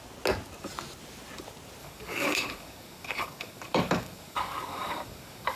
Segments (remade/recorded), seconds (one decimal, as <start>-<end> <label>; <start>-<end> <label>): 0.0-1.8 recorded; 1.8-5.6 remade